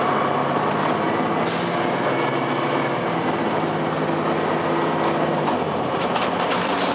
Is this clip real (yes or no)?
yes